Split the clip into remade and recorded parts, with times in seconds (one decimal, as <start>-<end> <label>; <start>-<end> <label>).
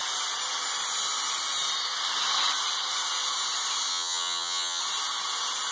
0.0-3.9 recorded; 3.9-4.8 remade; 4.8-5.7 recorded